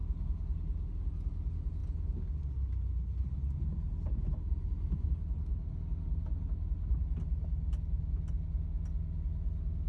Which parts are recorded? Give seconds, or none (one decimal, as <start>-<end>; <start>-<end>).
0.0-9.9